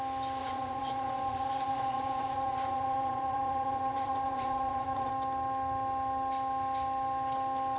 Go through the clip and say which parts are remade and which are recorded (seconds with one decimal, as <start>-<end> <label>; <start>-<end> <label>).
0.0-0.4 recorded; 0.4-5.1 remade; 5.1-7.8 recorded

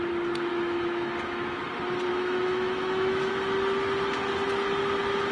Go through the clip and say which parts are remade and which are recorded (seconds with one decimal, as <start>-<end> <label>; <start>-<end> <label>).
0.0-0.5 recorded; 0.5-1.6 remade; 1.6-2.1 recorded; 2.1-3.3 remade; 3.3-5.3 recorded

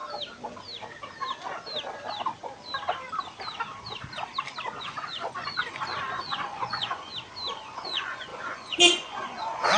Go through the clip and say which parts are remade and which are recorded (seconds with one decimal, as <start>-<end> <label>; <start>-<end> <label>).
0.0-4.8 recorded; 4.8-7.1 remade; 7.1-7.6 recorded; 7.6-9.8 remade

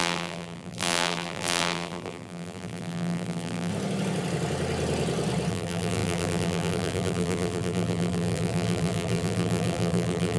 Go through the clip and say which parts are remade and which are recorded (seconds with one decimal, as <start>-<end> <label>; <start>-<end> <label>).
0.0-3.7 remade; 3.7-5.5 recorded; 5.5-10.4 remade

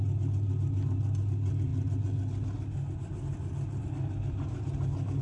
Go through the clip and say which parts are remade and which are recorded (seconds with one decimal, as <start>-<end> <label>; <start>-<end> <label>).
0.0-5.2 recorded

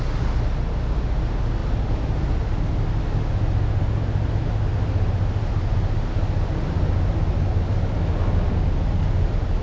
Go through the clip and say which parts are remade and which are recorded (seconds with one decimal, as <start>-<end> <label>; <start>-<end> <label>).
0.0-9.6 recorded

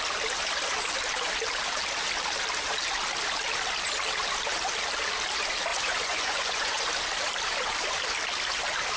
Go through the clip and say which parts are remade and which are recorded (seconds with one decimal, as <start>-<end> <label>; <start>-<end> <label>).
0.0-5.7 recorded; 5.7-6.9 remade; 6.9-9.0 recorded